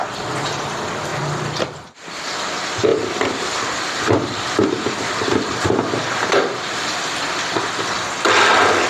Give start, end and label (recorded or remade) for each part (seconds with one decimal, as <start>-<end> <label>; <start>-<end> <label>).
0.0-1.1 recorded; 1.1-2.1 remade; 2.1-2.9 recorded; 2.9-7.1 remade; 7.1-8.9 recorded